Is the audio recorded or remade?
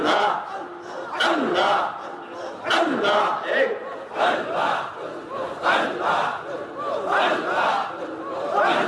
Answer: recorded